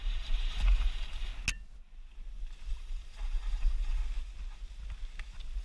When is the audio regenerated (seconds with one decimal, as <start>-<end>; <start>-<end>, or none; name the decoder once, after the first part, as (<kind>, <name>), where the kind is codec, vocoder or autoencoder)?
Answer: 0.0-1.3 (vocoder, BigVGAN v2); 2.7-4.0